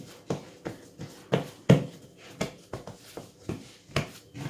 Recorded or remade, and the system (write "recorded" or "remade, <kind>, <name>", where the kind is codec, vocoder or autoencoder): recorded